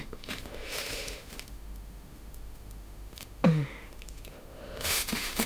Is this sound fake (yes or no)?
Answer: yes